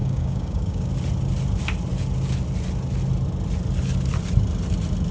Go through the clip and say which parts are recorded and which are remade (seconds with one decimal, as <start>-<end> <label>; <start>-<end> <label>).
0.0-0.9 remade; 0.9-5.1 recorded